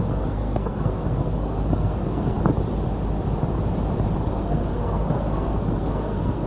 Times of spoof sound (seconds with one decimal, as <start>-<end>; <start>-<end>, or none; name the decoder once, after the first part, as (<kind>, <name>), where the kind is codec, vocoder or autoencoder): 0.0-2.4 (codec, SNAC); 4.3-6.5